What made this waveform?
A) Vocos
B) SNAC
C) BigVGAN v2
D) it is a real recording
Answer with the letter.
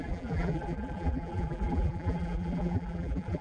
C